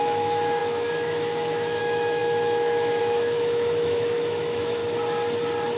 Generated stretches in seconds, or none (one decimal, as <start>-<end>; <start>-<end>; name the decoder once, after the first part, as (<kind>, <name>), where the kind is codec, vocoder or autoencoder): 0.0-4.8 (autoencoder, DAC-VAE)

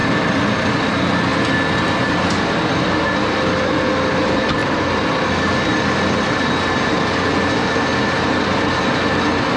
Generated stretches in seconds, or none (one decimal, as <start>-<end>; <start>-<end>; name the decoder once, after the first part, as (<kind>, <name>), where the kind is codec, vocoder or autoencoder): none

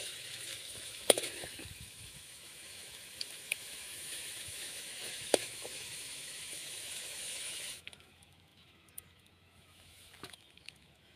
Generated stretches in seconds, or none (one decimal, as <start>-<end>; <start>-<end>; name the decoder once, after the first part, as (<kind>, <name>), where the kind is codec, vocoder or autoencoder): 0.0-11.2 (autoencoder, DAC-VAE)

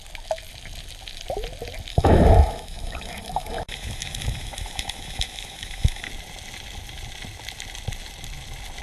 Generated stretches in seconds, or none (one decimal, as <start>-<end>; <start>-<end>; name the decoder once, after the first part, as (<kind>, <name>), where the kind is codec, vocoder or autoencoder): 1.9-6.1 (autoencoder, DAC-VAE)

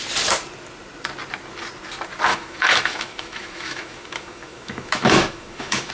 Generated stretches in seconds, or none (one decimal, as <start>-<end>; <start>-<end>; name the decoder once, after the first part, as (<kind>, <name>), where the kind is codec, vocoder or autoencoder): 2.3-5.9 (autoencoder, DAC-VAE)

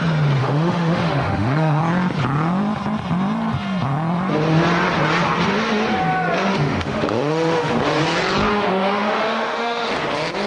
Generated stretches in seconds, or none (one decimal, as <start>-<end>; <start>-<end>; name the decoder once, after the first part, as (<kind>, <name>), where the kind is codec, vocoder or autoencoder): 0.4-1.8 (autoencoder, DAC-VAE); 6.5-7.7; 8.5-9.9

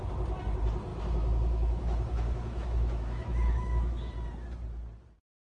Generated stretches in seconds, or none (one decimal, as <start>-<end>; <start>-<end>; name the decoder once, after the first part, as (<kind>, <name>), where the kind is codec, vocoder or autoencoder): 0.9-4.1 (autoencoder, DAC-VAE)

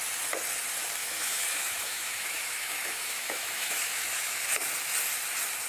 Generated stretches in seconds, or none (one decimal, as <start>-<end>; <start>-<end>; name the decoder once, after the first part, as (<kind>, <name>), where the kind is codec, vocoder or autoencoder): 1.0-4.4 (autoencoder, DAC-VAE)